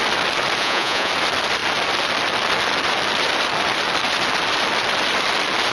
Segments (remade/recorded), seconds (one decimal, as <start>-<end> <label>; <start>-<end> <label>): 0.0-0.6 recorded; 0.6-1.1 remade; 1.1-5.7 recorded